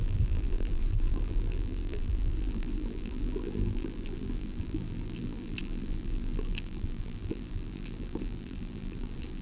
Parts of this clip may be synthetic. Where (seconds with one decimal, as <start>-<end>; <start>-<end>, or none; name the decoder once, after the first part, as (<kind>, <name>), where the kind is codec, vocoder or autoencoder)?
0.0-9.4 (vocoder, BigVGAN v2)